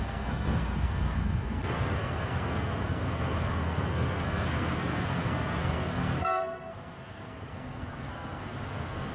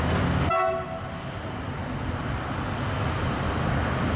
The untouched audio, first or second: second